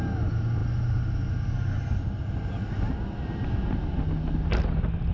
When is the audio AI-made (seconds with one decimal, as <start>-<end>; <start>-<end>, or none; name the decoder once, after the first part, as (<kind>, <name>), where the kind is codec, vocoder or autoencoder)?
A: none